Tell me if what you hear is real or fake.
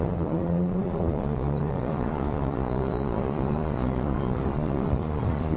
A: fake